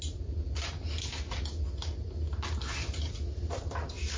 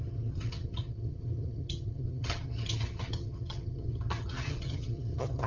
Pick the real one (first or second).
first